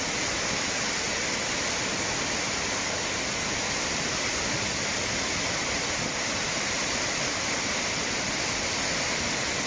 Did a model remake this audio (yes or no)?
yes